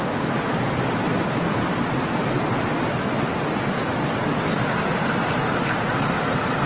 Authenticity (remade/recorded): recorded